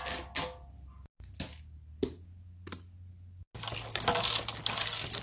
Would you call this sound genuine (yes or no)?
yes